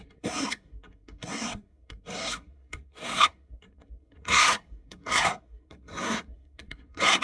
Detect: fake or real fake